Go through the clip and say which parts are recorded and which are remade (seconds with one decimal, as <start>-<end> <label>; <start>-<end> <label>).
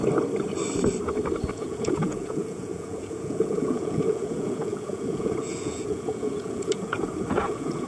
0.0-1.5 recorded; 1.5-7.9 remade